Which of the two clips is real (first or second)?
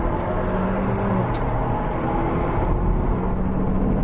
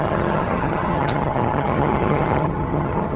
first